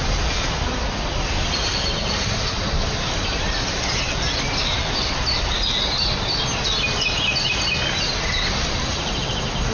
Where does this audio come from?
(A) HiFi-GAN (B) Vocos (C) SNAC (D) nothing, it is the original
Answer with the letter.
D